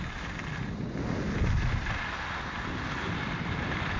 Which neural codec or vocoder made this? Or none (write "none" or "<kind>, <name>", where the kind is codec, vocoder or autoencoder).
none